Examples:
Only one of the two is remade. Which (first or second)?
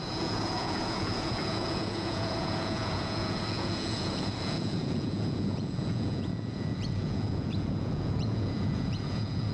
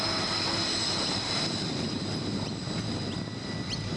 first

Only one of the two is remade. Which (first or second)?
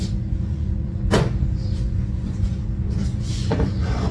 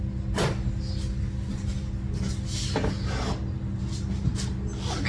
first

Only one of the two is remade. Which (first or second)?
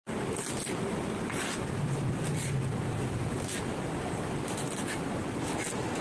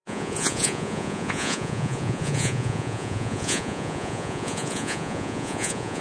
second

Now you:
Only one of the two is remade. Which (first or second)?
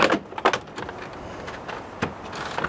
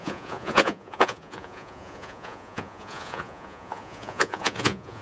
second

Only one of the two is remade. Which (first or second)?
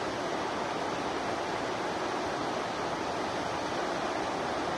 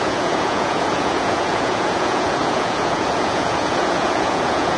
second